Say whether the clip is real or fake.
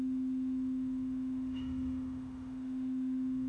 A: fake